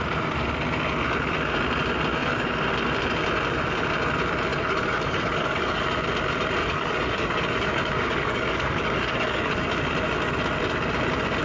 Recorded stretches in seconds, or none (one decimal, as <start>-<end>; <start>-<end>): 0.0-2.1; 2.6-4.5; 5.8-6.6; 9.7-11.4